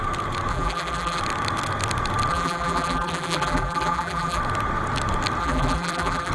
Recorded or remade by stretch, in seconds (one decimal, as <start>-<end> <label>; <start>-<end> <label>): 0.0-0.5 recorded; 0.5-1.2 remade; 1.2-2.3 recorded; 2.3-4.4 remade; 4.4-5.4 recorded; 5.4-6.3 remade